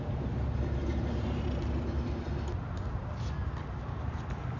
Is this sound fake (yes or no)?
no